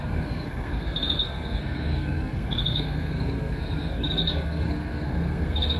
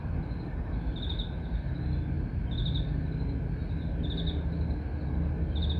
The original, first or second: second